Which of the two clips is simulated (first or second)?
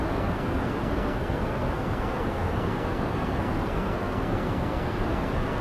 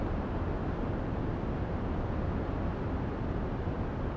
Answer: first